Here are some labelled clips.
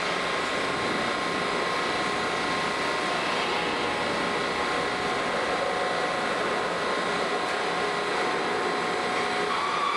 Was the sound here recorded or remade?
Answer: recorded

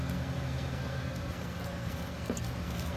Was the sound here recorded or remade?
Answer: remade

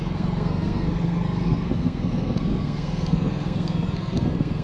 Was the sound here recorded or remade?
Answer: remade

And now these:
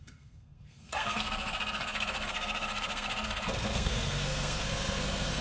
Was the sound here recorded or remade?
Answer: remade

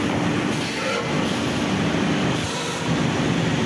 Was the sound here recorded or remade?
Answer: recorded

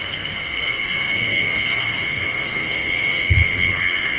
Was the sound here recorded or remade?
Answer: remade